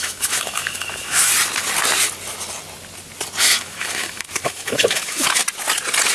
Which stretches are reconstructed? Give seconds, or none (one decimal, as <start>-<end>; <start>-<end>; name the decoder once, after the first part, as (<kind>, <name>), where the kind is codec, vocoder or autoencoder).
0.0-1.3 (autoencoder, DAC-VAE); 3.4-5.4